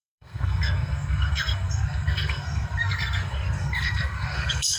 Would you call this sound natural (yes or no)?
no